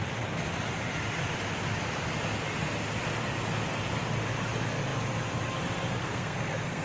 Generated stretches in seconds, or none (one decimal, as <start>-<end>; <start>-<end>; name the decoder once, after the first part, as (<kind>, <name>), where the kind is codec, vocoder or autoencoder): 6.0-6.8 (codec, SNAC)